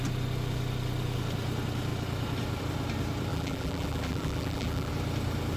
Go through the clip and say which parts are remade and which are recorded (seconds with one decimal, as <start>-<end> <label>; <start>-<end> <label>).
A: 0.0-3.3 recorded; 3.3-4.9 remade; 4.9-5.6 recorded